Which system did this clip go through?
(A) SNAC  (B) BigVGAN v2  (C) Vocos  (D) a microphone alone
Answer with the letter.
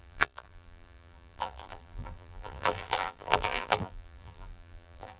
B